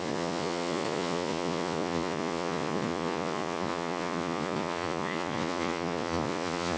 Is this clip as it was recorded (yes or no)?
no